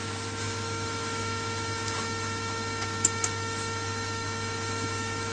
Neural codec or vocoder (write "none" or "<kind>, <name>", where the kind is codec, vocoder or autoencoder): autoencoder, DAC-VAE